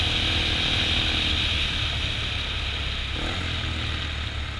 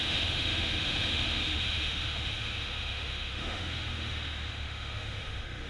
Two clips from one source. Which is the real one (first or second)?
first